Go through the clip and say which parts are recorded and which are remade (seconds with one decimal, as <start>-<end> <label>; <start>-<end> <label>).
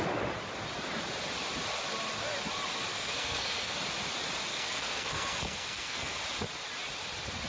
0.0-2.9 recorded; 2.9-3.8 remade; 3.8-4.5 recorded; 4.5-6.2 remade; 6.2-7.5 recorded